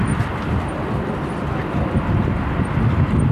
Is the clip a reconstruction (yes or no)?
no